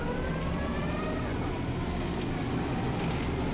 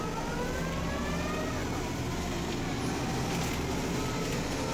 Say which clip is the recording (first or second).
second